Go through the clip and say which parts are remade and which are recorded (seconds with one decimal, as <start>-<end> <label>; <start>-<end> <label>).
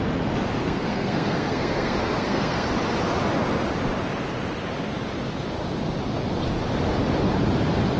0.0-0.6 recorded; 0.6-2.7 remade; 2.7-8.0 recorded